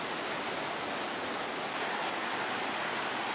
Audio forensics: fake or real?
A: real